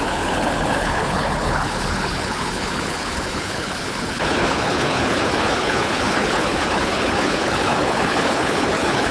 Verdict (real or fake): fake